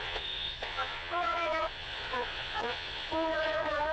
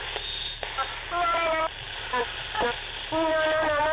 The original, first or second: second